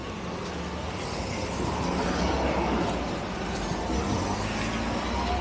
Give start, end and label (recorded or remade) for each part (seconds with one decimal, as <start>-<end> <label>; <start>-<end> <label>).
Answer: 0.0-5.4 recorded